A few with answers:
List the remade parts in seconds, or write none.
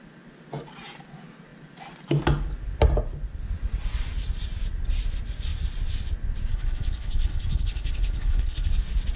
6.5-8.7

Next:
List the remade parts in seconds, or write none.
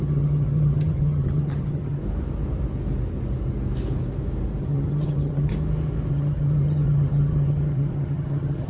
0.0-2.0; 4.6-5.5; 6.1-8.7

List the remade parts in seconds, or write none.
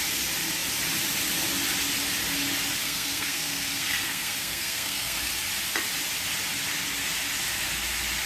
2.8-5.3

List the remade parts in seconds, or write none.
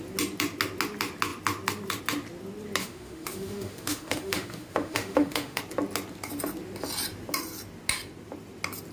2.8-5.6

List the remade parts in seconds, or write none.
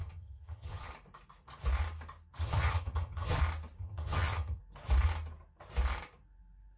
0.0-0.9; 2.4-3.4; 3.8-4.6